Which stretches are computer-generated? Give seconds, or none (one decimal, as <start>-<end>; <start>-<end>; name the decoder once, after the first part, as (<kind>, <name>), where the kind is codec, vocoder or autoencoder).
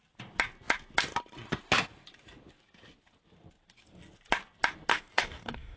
4.9-5.8 (codec, DAC)